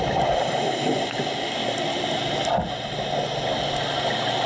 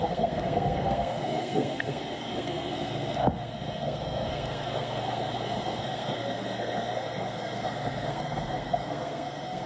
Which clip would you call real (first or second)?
first